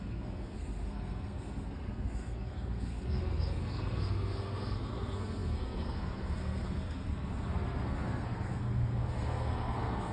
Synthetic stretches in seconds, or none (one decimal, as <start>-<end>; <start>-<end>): 0.0-10.1